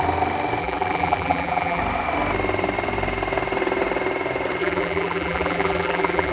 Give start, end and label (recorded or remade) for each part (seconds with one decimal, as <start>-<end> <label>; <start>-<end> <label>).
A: 0.0-0.6 recorded; 0.6-1.8 remade; 1.8-4.6 recorded; 4.6-6.3 remade